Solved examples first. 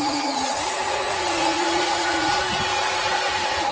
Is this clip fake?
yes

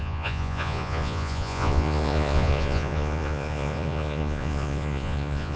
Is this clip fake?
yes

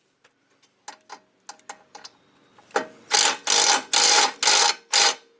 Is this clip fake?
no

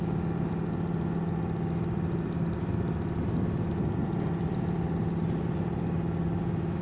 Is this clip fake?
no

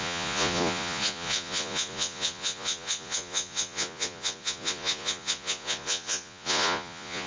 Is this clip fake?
yes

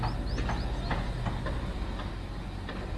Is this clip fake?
no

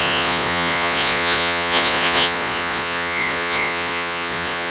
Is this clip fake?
yes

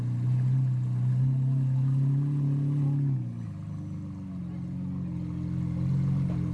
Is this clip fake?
no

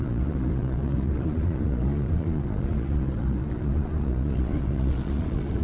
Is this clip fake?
yes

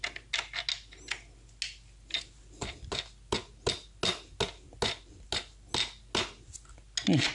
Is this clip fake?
no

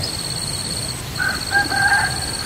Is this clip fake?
no